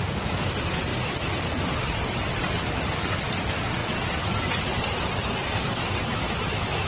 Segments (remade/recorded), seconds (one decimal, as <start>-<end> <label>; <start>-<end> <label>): 0.0-6.1 recorded; 6.1-6.9 remade